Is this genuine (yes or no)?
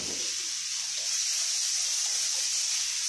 yes